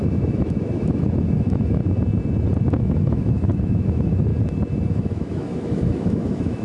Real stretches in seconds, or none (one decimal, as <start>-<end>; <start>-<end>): 1.8-2.8; 4.3-4.9